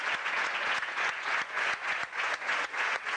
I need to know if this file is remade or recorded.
remade